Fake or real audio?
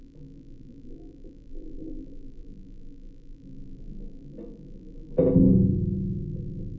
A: real